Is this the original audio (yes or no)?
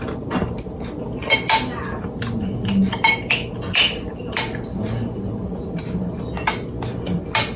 yes